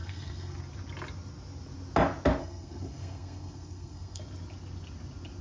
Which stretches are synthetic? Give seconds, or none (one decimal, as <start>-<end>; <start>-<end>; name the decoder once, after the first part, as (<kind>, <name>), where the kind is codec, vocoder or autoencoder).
0.0-0.6 (codec, SNAC); 2.4-4.2